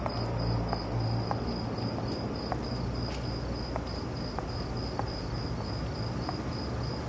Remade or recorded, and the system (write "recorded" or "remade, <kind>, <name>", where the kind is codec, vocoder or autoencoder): recorded